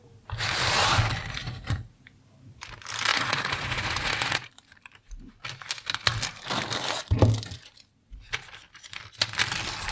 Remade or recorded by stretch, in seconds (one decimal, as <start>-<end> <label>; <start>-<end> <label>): 0.0-1.4 recorded; 1.4-2.0 remade; 2.0-3.1 recorded; 3.1-4.5 remade; 4.5-9.9 recorded